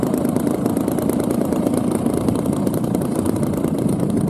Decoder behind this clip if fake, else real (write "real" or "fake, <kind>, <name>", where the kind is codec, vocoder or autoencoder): fake, vocoder, BigVGAN v2